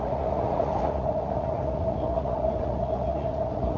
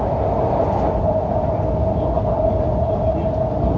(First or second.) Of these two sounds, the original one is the second